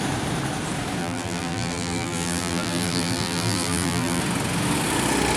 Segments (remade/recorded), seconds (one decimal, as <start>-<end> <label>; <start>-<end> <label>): 0.0-1.0 recorded; 1.0-4.2 remade; 4.2-5.4 recorded